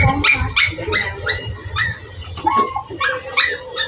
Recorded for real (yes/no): yes